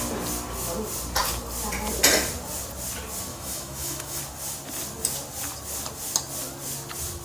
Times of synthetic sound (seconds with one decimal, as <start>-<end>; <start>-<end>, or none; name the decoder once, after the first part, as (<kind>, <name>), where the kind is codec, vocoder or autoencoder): 3.3-4.2 (autoencoder, DAC-VAE)